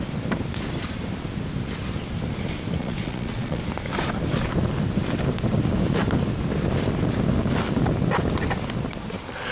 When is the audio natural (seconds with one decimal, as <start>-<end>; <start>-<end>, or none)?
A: 0.0-2.8; 3.6-9.5